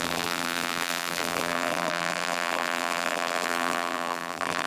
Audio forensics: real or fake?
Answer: fake